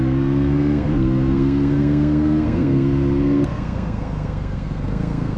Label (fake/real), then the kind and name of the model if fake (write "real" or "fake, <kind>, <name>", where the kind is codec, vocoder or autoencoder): fake, codec, SNAC